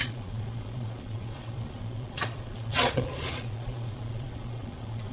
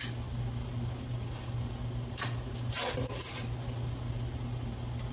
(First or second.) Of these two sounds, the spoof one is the first